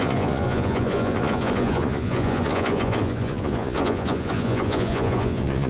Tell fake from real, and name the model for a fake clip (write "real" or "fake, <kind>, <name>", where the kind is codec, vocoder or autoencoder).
fake, vocoder, Vocos